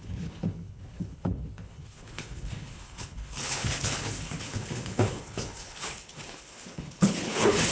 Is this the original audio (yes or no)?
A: no